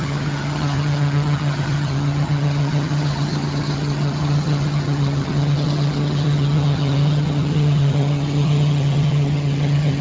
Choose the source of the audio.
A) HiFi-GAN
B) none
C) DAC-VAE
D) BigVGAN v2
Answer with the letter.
A